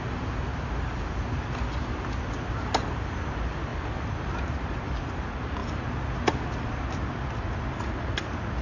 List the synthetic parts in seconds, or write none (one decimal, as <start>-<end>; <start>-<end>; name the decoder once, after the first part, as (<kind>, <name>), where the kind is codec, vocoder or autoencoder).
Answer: none

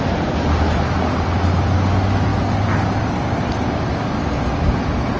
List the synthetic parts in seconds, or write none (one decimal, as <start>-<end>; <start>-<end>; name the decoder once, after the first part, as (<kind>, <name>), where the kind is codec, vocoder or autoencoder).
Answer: 0.0-2.3 (vocoder, BigVGAN v2)